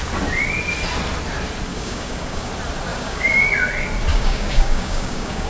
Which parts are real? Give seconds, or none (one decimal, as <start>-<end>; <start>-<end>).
0.0-1.7; 2.5-2.9; 3.5-4.1